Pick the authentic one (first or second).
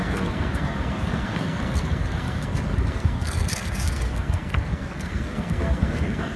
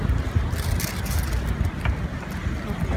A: second